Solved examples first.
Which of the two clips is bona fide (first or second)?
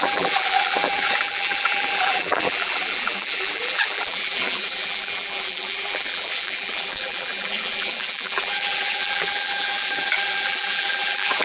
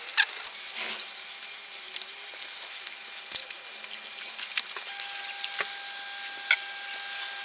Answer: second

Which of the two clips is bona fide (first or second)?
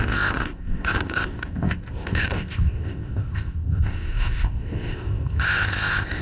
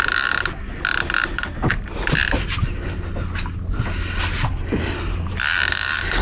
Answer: second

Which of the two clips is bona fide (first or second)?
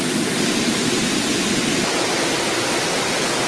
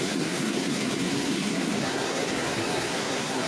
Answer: first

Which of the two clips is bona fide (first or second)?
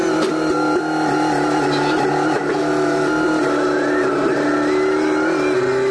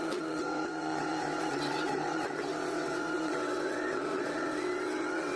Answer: first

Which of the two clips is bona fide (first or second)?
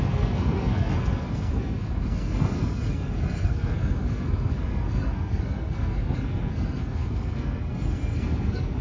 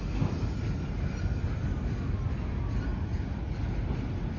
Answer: second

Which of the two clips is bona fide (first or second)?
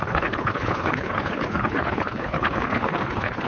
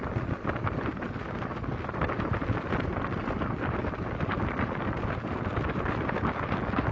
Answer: second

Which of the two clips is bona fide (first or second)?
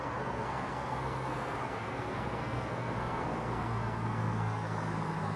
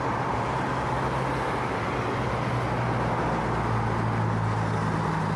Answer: second